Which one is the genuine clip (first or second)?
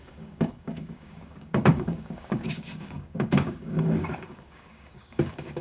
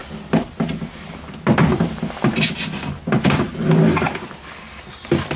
second